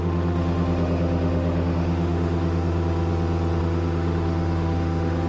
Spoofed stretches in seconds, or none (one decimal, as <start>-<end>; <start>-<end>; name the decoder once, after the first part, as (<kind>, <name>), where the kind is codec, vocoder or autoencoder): 0.0-3.1 (autoencoder, DAC-VAE); 3.6-5.3

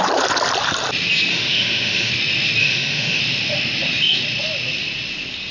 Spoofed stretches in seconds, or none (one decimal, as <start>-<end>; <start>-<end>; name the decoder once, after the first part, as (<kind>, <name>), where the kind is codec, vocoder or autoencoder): 1.3-2.1 (autoencoder, DAC-VAE); 2.6-3.2

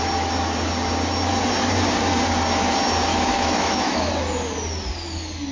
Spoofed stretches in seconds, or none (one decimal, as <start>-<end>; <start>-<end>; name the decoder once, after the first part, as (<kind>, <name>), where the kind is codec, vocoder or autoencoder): 3.1-4.1 (autoencoder, DAC-VAE)

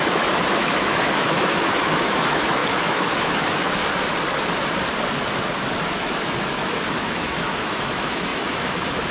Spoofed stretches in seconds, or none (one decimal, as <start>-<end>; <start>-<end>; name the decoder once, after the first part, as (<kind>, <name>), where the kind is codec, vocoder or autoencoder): 0.0-3.8 (autoencoder, DAC-VAE); 5.8-9.1

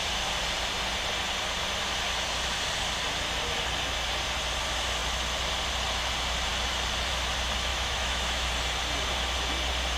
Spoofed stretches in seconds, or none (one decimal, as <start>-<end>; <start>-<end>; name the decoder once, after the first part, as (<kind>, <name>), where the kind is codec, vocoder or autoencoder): 7.7-8.5 (autoencoder, DAC-VAE)

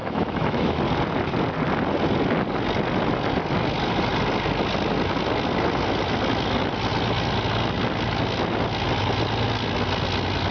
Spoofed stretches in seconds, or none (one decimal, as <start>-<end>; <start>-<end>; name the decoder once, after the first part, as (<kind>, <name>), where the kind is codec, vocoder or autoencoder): 0.0-0.8 (autoencoder, DAC-VAE)

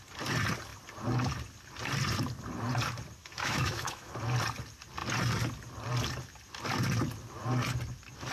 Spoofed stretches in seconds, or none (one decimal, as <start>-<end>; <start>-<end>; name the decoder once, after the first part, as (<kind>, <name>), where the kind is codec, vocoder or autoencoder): 3.2-4.1 (autoencoder, DAC-VAE)